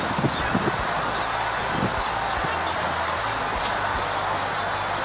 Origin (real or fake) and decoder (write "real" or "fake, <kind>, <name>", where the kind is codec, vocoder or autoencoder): real